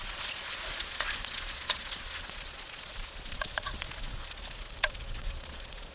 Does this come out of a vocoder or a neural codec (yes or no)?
yes